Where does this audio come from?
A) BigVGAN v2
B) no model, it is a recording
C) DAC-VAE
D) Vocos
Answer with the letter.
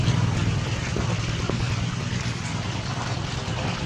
B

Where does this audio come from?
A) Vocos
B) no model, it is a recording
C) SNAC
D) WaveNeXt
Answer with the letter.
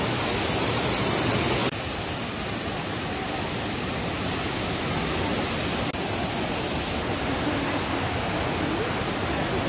B